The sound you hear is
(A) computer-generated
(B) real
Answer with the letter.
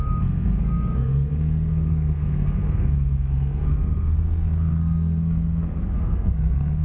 A